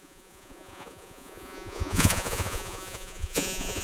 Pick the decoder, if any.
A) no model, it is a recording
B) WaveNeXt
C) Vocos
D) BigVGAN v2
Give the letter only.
C